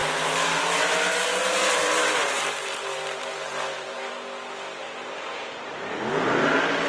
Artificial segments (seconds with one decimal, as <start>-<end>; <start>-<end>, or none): 0.0-0.6; 1.3-4.1; 4.8-6.5